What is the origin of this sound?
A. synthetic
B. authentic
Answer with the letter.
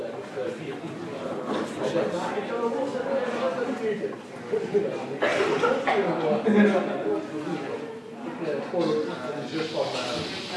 B